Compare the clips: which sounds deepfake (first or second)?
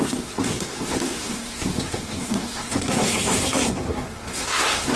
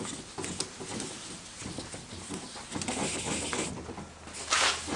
first